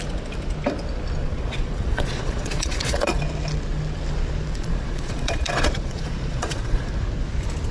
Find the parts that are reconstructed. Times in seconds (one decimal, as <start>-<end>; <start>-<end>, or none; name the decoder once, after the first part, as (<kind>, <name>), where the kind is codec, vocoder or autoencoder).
1.2-3.2 (vocoder, Vocos); 4.5-6.9